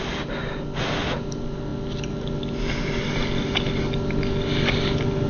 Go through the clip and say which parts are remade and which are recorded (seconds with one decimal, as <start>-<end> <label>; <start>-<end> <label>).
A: 0.0-5.3 recorded